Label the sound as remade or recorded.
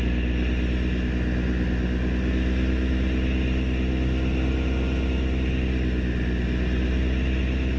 recorded